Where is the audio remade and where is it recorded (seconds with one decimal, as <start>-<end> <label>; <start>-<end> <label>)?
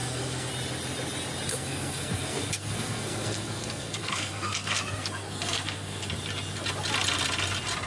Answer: 0.0-0.5 remade; 0.5-1.5 recorded; 1.5-6.1 remade; 6.1-7.9 recorded